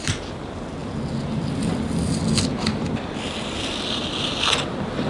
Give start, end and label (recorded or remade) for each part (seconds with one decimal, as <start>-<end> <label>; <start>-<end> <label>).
0.0-0.8 remade; 0.8-1.3 recorded; 1.3-5.1 remade